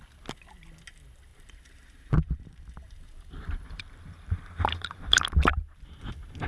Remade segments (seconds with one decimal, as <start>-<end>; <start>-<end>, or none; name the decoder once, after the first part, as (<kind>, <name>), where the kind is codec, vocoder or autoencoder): 1.3-5.2 (vocoder, BigVGAN v2)